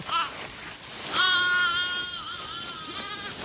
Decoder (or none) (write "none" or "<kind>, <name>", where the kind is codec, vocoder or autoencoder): none